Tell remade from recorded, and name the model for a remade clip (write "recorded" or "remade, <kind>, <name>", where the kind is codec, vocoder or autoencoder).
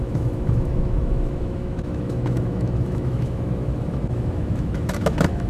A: remade, autoencoder, DAC-VAE